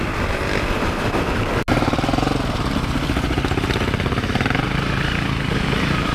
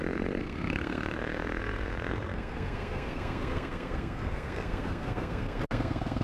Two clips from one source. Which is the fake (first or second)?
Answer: second